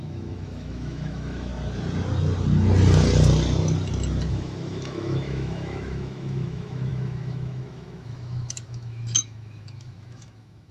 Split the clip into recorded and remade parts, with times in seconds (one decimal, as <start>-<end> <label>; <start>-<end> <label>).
0.0-1.5 remade; 1.5-4.3 recorded; 4.3-10.7 remade